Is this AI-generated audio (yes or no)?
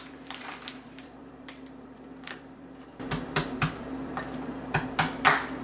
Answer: yes